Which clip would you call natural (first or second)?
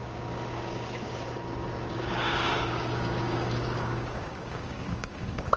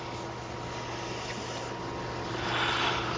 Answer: second